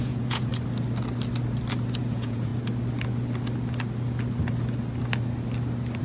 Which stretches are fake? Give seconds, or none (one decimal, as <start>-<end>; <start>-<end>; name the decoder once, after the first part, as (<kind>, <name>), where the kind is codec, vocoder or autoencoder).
0.0-0.5 (vocoder, Vocos); 2.1-2.5